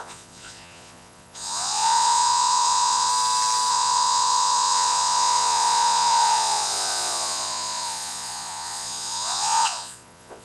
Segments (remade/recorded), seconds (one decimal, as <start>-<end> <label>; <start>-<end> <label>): 0.0-3.1 remade; 3.1-3.7 recorded; 3.7-10.4 remade

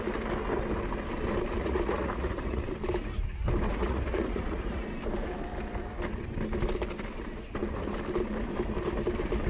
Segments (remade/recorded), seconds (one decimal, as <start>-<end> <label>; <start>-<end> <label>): 0.0-1.6 recorded; 1.6-2.6 remade; 2.6-3.7 recorded; 3.7-5.0 remade; 5.0-9.5 recorded